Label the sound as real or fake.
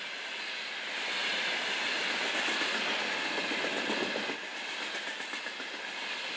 real